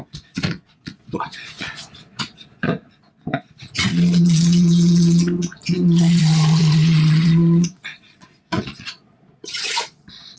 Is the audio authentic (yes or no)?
no